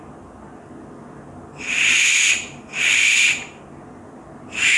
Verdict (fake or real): real